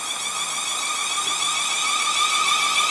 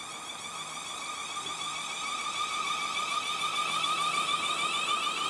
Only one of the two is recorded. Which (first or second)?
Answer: first